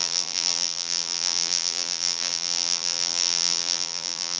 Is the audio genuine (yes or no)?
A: no